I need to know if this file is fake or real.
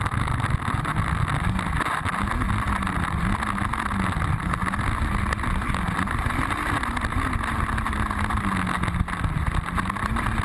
real